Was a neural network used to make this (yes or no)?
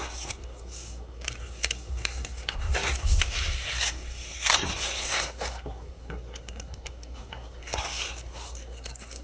yes